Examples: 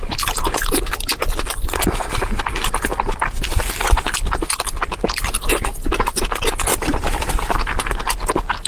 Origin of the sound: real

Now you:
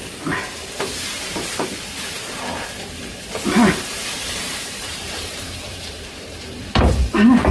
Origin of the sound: fake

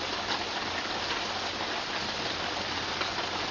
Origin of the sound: real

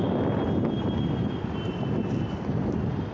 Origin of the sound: real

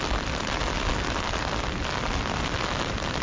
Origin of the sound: real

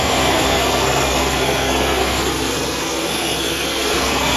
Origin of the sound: fake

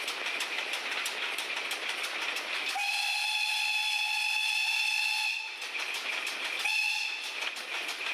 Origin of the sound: real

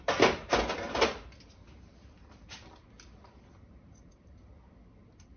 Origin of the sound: real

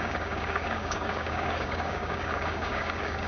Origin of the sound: fake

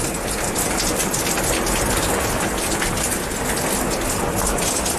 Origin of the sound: real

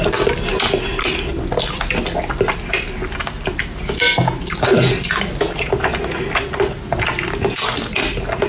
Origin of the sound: real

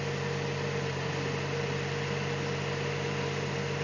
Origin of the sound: real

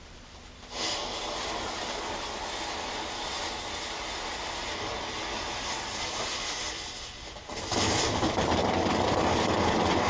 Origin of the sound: real